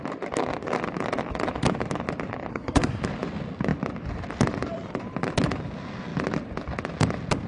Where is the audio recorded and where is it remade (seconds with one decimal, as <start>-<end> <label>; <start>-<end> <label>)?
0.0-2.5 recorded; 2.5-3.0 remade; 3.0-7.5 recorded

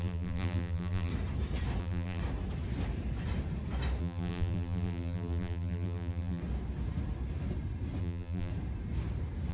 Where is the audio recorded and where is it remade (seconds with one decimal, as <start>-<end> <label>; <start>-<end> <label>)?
0.0-1.1 remade; 1.1-1.8 recorded; 1.8-2.2 remade; 2.2-4.0 recorded; 4.0-6.4 remade; 6.4-8.0 recorded; 8.0-8.5 remade; 8.5-9.5 recorded

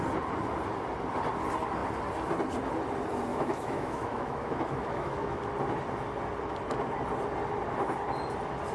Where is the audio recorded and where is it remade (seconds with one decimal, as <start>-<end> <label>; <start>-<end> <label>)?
0.0-3.3 recorded; 3.3-5.4 remade; 5.4-8.7 recorded

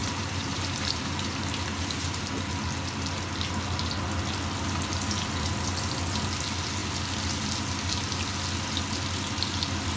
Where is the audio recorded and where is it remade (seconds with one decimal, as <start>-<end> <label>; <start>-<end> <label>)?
0.0-2.2 remade; 2.2-10.0 recorded